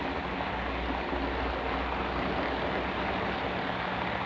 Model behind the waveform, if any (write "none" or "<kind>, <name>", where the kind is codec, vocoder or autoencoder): none